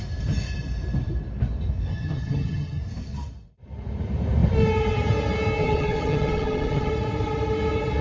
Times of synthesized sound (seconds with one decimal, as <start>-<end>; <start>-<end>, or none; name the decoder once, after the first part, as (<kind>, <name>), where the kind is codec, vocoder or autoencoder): 1.9-2.8 (vocoder, HiFi-GAN); 5.6-6.9